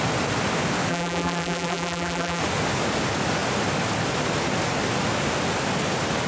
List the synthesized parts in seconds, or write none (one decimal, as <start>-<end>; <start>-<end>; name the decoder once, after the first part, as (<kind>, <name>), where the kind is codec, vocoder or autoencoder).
0.9-2.4 (vocoder, BigVGAN v2)